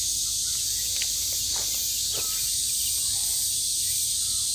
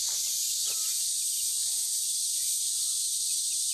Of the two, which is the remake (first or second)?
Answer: second